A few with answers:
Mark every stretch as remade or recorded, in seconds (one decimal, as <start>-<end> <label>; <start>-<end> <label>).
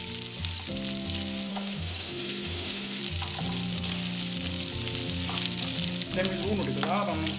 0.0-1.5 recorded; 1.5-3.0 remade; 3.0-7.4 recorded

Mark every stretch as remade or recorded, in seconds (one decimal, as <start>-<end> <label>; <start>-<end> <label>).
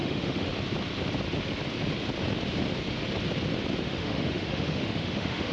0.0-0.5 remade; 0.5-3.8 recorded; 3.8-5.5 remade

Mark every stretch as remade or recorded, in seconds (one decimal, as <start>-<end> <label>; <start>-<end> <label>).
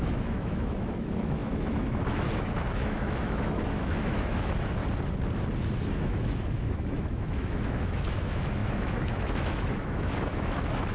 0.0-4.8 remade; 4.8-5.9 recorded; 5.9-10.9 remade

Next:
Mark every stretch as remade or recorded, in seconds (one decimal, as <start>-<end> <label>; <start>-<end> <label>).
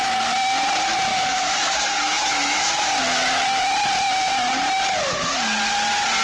0.0-1.1 recorded; 1.1-3.0 remade; 3.0-6.2 recorded